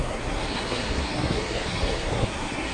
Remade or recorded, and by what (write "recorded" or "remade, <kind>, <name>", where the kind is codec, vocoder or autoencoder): remade, codec, SNAC